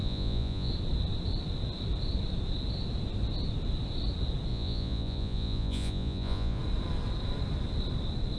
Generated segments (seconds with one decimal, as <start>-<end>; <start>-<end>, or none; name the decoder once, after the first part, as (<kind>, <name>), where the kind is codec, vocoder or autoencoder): 0.0-0.7 (vocoder, Vocos); 4.5-6.6